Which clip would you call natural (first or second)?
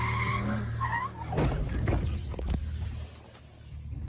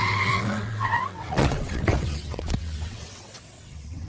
first